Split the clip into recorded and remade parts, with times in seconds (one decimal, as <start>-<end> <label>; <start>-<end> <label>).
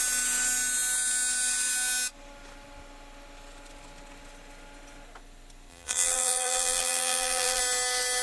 0.0-5.7 recorded; 5.7-7.6 remade; 7.6-8.2 recorded